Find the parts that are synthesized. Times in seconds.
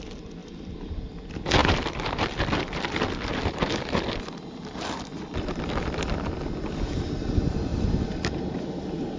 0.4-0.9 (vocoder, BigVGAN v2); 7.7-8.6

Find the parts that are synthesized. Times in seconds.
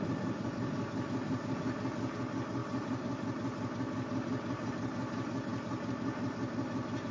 none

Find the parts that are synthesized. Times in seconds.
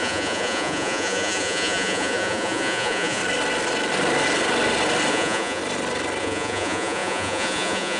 0.0-3.2 (vocoder, Vocos); 5.1-5.6; 6.2-8.0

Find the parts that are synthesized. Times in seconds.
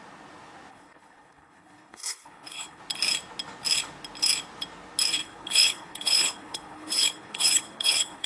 0.7-2.8 (codec, HILCodec); 5.2-8.3